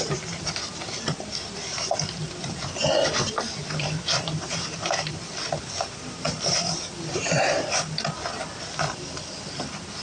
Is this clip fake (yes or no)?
yes